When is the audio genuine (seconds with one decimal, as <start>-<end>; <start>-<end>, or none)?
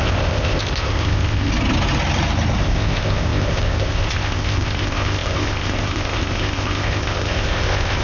1.5-2.6